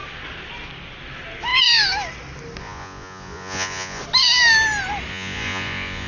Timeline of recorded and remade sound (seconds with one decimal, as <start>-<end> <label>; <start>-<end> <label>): 0.0-2.6 recorded; 2.6-4.0 remade; 4.0-5.1 recorded; 5.1-6.1 remade